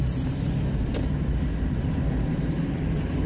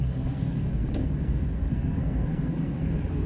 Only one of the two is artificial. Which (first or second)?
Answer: second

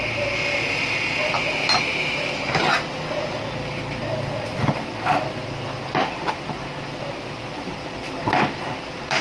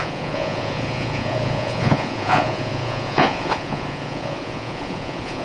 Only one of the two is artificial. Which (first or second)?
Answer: second